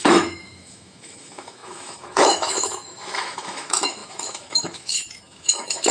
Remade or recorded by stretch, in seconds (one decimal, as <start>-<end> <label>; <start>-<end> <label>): 0.0-5.9 remade